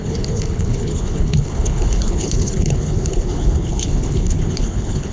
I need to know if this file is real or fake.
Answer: fake